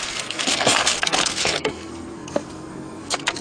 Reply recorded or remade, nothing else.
remade